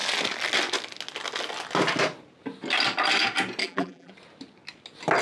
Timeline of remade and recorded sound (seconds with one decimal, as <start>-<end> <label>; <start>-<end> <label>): 0.0-3.6 recorded; 3.6-4.1 remade; 4.1-5.2 recorded